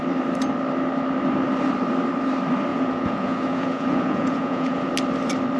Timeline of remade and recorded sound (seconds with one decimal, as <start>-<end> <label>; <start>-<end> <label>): 0.0-2.7 recorded; 2.7-4.9 remade; 4.9-5.6 recorded